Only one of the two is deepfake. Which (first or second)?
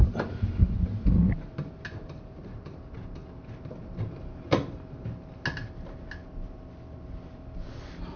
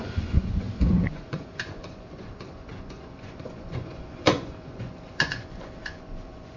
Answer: second